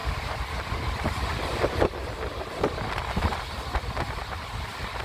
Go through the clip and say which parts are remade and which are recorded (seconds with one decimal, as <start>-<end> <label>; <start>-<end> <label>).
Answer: 0.0-5.0 recorded

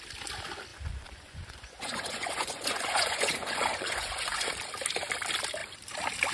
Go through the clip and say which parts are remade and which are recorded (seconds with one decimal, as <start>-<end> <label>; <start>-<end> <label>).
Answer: 0.0-0.7 recorded; 0.7-4.5 remade; 4.5-6.3 recorded

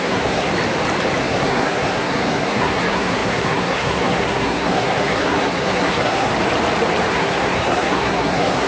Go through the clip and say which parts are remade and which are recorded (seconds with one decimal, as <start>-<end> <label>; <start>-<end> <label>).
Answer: 0.0-0.5 remade; 0.5-1.2 recorded; 1.2-6.3 remade; 6.3-7.1 recorded; 7.1-8.7 remade

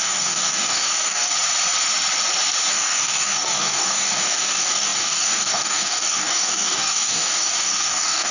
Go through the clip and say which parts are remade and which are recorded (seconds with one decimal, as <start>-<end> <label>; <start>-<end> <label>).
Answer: 0.0-1.3 remade; 1.3-2.7 recorded; 2.7-8.3 remade

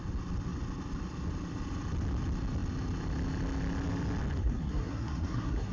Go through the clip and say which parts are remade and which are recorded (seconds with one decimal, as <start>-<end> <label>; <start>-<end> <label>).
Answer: 0.0-4.4 recorded; 4.4-5.7 remade

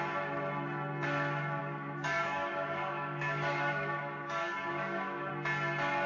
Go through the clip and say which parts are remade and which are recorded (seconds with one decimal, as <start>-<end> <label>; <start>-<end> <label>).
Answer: 0.0-1.6 recorded; 1.6-5.3 remade; 5.3-6.1 recorded